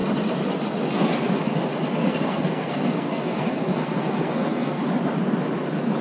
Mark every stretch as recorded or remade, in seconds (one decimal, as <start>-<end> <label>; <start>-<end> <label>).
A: 0.0-1.9 recorded; 1.9-4.8 remade; 4.8-6.0 recorded